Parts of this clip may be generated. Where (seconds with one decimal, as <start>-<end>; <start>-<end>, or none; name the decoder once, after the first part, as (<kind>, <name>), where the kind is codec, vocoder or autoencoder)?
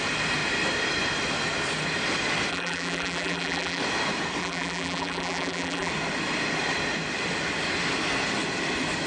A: 2.5-3.8 (vocoder, BigVGAN v2); 4.4-5.9